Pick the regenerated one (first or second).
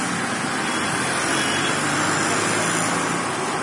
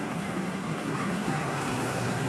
second